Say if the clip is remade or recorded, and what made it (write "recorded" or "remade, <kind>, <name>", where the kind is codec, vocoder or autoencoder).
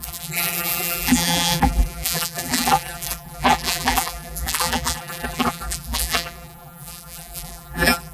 remade, vocoder, BigVGAN v2